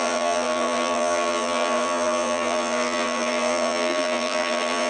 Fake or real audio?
fake